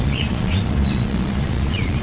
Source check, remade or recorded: remade